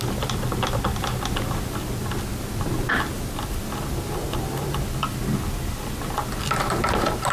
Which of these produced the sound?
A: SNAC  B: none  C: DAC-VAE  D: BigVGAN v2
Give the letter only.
B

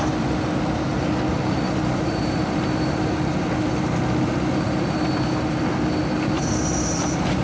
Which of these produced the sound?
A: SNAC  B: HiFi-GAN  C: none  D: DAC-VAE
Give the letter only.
C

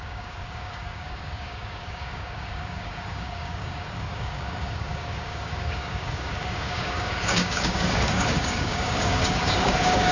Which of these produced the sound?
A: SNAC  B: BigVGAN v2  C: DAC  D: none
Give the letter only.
C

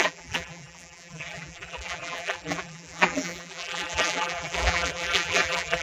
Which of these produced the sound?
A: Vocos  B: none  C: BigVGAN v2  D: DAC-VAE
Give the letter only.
C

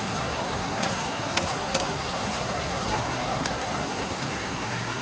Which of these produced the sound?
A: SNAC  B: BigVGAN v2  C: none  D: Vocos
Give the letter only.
A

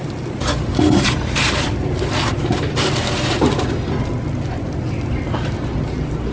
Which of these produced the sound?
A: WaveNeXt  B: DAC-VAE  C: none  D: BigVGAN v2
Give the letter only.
C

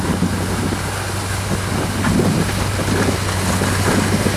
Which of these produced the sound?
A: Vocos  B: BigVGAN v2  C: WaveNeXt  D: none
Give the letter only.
D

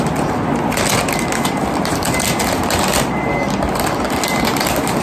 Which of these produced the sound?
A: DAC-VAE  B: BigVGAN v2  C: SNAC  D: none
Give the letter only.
D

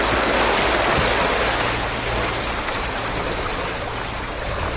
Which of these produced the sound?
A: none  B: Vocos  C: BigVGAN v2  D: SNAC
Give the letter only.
A